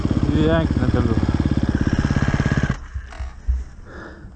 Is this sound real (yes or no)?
yes